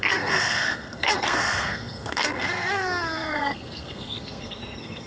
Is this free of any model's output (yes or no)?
no